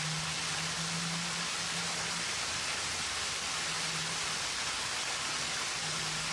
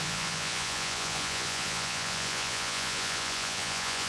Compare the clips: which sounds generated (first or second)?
second